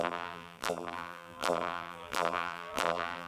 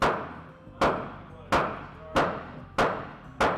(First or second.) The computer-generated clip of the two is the first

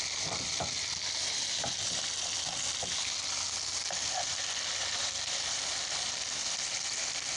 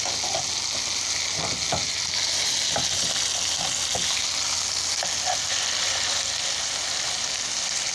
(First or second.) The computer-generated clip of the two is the first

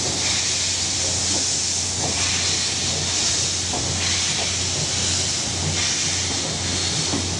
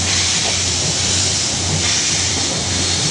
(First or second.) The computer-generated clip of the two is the second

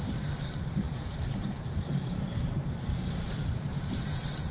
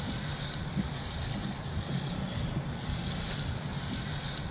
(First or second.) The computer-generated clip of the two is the first